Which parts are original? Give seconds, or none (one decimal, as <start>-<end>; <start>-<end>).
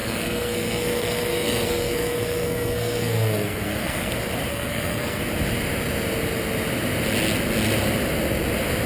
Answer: 4.1-4.5; 5.2-8.9